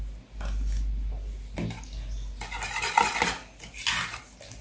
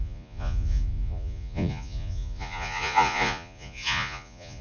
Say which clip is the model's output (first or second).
second